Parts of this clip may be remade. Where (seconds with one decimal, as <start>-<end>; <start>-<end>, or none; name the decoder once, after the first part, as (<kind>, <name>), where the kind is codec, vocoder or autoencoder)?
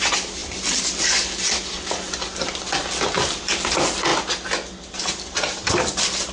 none